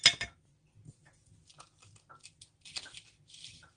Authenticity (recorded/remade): recorded